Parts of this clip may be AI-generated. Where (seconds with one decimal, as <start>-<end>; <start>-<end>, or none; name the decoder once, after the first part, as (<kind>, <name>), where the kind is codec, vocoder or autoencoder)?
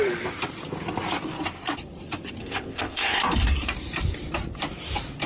2.4-3.2 (codec, ZipCodec)